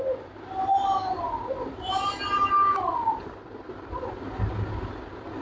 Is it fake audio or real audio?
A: real